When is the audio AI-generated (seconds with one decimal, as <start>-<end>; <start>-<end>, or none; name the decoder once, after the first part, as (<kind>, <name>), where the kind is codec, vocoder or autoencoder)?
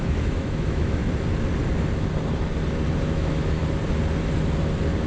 0.0-1.0 (autoencoder, DAC-VAE); 3.0-3.6